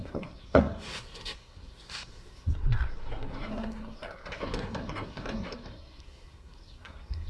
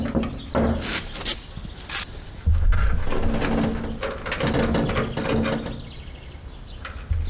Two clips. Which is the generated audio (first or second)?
first